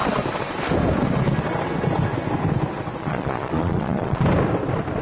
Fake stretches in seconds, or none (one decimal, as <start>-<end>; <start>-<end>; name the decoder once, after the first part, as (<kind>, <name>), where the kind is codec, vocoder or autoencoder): 3.0-4.2 (vocoder, Vocos)